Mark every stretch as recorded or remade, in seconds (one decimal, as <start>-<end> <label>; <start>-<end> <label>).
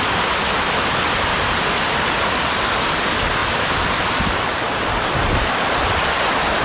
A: 0.0-3.4 recorded; 3.4-6.1 remade; 6.1-6.6 recorded